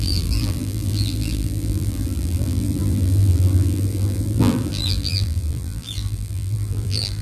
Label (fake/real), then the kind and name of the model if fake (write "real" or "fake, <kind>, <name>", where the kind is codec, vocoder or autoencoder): fake, vocoder, BigVGAN v2